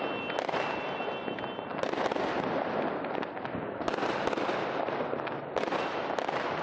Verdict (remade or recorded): recorded